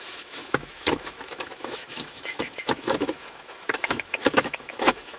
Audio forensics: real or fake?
fake